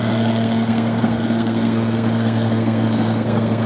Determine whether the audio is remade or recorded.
remade